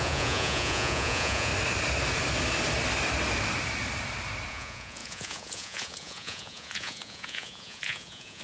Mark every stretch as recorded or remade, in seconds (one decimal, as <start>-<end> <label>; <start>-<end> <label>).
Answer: 0.0-1.5 remade; 1.5-4.5 recorded; 4.5-8.4 remade